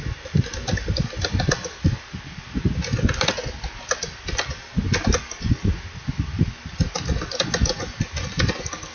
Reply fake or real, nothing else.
real